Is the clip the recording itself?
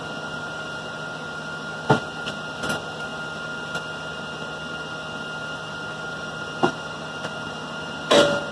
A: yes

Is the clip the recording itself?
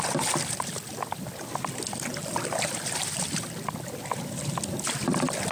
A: yes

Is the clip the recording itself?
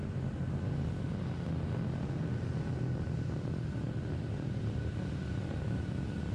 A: yes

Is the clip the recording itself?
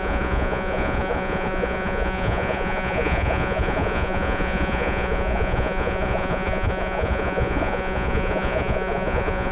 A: no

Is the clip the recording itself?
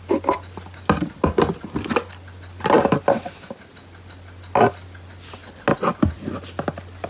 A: yes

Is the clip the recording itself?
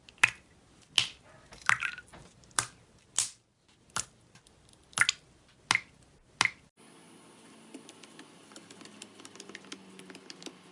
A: yes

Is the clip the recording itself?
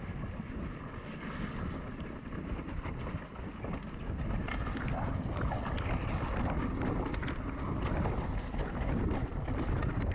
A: yes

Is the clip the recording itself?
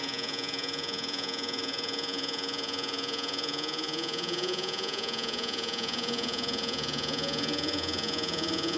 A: no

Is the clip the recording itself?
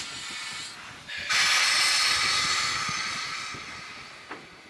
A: yes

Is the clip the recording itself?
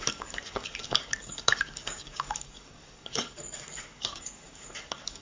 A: no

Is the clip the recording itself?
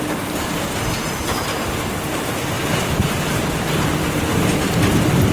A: no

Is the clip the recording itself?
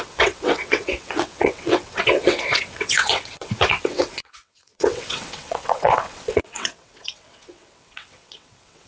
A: no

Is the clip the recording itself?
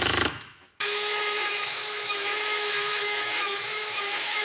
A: no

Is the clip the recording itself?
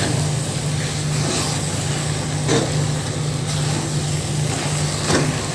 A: yes